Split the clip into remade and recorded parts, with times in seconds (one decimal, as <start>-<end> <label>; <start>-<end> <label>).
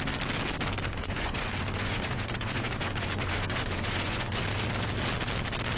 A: 0.0-0.9 recorded; 0.9-4.4 remade; 4.4-5.8 recorded